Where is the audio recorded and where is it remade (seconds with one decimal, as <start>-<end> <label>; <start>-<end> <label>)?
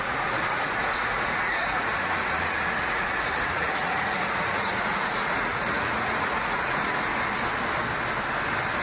0.0-7.1 remade; 7.1-8.8 recorded